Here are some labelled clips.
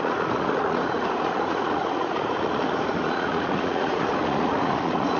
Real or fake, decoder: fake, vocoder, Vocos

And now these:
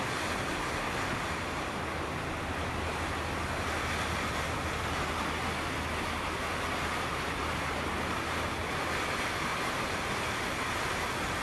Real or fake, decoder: real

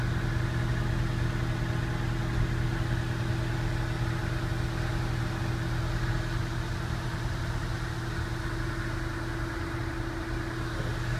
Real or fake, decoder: real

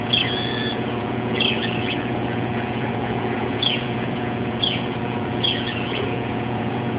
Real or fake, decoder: fake, vocoder, Vocos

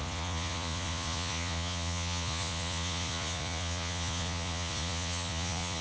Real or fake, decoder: fake, vocoder, Vocos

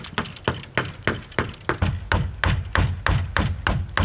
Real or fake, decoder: real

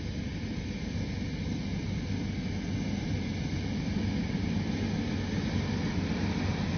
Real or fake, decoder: real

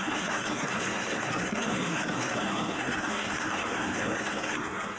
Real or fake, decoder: fake, codec, SNAC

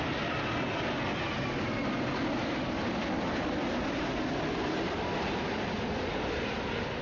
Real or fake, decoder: real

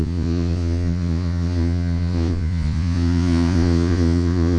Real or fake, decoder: fake, vocoder, Vocos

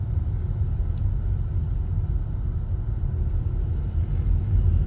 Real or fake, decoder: real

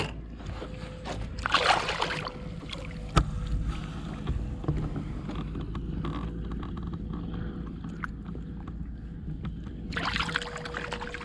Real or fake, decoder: real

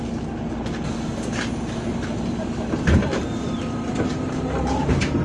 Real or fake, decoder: real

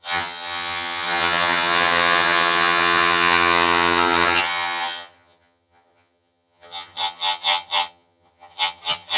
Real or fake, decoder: fake, vocoder, HiFi-GAN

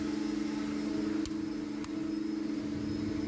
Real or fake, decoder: real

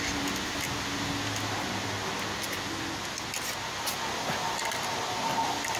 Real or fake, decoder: real